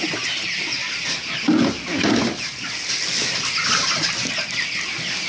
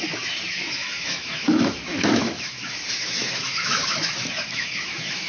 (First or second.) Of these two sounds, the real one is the first